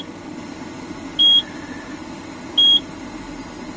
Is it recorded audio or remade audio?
recorded